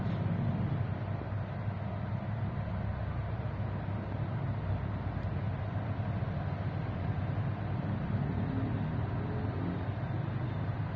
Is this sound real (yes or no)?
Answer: yes